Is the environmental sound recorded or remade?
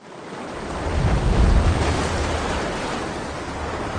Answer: recorded